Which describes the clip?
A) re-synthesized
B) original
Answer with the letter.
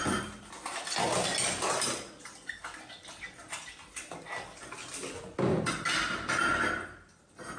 B